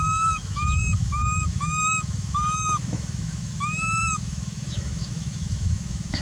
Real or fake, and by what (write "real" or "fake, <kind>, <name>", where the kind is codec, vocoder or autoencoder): fake, autoencoder, DAC-VAE